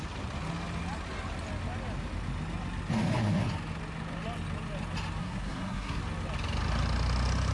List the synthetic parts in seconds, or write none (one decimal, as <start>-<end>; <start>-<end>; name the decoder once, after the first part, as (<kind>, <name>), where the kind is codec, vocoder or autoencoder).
5.2-6.0 (codec, SNAC)